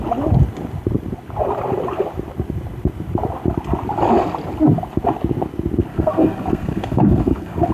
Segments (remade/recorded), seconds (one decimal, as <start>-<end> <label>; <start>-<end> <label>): 0.0-5.9 recorded; 5.9-7.7 remade